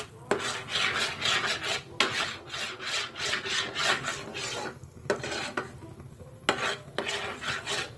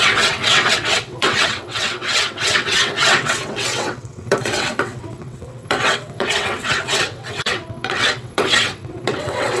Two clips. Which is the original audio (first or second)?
first